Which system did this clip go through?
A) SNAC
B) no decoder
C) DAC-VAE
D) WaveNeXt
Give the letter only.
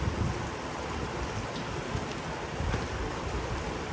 B